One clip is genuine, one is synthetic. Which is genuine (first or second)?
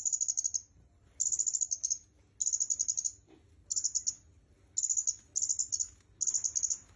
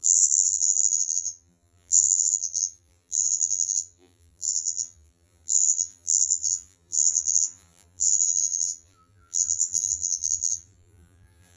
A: first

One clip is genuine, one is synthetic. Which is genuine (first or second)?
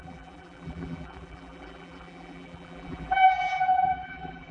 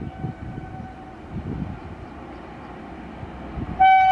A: second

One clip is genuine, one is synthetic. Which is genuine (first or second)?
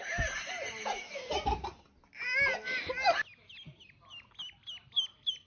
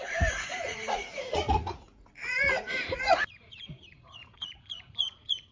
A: first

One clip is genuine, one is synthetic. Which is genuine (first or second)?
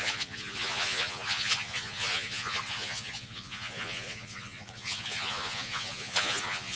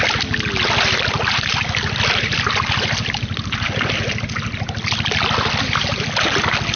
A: second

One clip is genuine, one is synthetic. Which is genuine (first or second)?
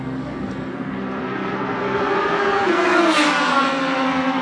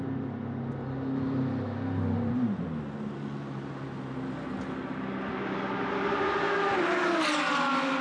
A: second